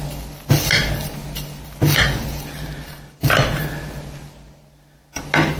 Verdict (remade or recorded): recorded